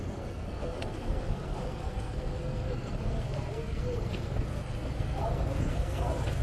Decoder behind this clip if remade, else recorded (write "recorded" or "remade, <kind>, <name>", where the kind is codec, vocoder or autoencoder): remade, codec, SNAC